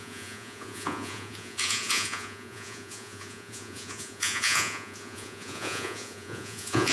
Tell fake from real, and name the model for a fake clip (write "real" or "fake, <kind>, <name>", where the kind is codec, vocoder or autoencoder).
fake, vocoder, Vocos